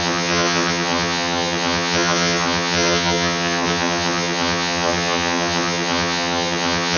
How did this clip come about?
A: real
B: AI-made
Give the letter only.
B